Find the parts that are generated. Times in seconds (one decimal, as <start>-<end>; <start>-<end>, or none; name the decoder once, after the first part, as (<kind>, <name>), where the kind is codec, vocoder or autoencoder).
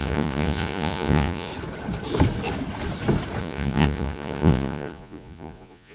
0.0-1.5 (vocoder, Vocos); 3.4-5.9